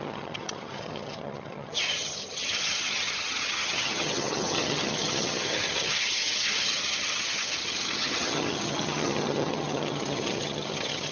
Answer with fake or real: fake